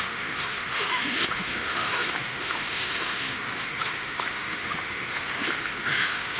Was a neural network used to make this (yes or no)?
yes